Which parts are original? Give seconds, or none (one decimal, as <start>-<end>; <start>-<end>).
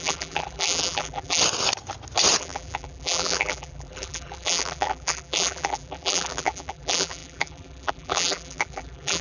1.4-2.4